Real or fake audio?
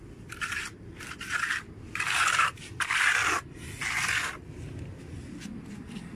real